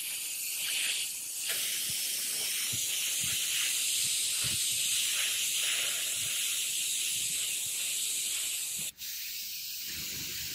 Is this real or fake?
real